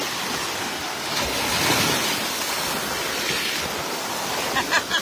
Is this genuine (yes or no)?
yes